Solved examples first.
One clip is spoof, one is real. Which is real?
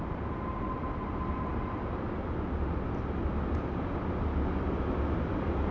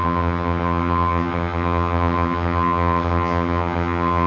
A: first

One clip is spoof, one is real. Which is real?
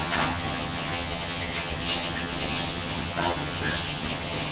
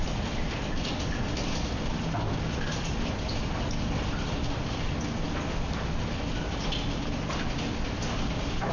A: second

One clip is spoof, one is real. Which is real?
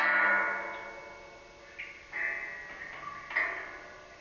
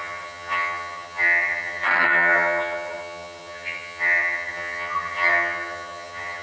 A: first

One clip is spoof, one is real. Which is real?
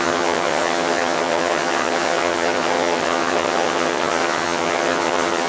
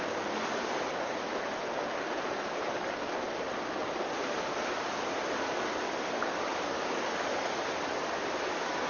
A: second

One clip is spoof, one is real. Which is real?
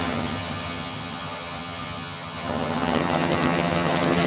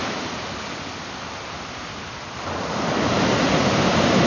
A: second